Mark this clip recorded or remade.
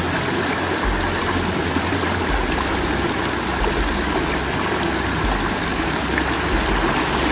recorded